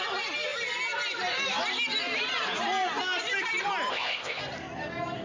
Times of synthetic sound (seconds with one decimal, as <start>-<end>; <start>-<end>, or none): 3.9-4.4